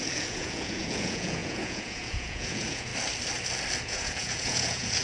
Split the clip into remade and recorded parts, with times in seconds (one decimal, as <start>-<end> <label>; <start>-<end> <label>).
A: 0.0-2.9 remade; 2.9-3.8 recorded; 3.8-5.0 remade